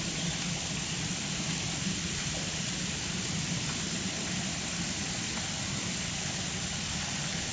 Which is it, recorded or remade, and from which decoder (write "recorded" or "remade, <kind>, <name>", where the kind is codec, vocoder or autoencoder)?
remade, vocoder, BigVGAN v2